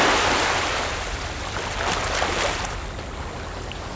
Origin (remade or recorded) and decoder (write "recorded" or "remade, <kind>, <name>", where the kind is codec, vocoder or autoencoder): recorded